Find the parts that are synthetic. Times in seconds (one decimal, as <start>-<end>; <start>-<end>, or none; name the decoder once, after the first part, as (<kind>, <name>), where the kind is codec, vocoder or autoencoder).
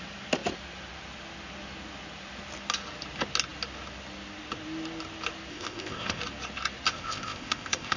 5.5-6.2 (codec, ZipCodec); 6.9-8.0